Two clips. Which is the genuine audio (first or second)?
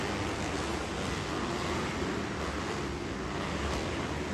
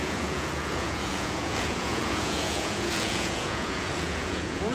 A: first